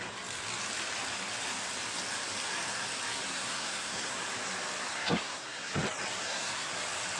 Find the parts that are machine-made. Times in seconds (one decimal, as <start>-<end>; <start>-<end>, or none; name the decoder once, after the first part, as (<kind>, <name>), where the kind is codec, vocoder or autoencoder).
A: 3.3-4.1 (codec, SNAC); 4.9-5.7; 6.2-6.7

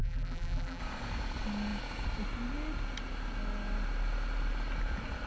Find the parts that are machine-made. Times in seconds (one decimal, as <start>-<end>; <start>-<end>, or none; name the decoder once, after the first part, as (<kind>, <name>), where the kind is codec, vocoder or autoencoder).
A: 0.0-0.8 (vocoder, BigVGAN v2)

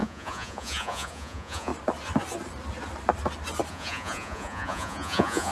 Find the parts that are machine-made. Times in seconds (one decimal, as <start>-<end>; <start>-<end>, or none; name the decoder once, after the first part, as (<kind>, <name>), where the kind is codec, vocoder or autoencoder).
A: 0.0-1.7 (vocoder, Vocos); 3.7-5.5

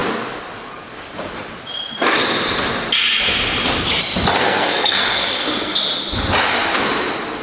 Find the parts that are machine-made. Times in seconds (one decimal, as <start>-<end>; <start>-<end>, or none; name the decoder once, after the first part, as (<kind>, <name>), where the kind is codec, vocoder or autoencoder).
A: 4.4-5.7 (codec, SNAC)

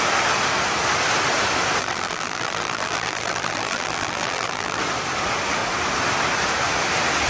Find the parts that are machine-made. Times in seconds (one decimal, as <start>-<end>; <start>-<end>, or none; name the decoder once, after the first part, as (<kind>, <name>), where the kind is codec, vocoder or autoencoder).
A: 1.8-4.8 (vocoder, BigVGAN v2)